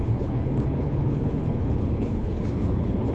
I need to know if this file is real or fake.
fake